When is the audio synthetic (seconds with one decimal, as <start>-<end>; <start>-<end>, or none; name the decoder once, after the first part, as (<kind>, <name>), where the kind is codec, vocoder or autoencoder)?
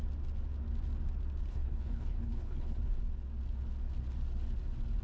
1.5-2.8 (codec, HILCodec)